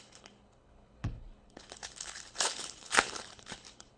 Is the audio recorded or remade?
remade